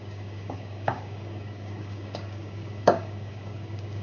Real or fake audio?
fake